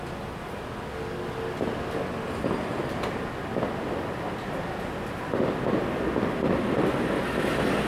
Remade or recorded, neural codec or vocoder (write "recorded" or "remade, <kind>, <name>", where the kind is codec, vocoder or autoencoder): recorded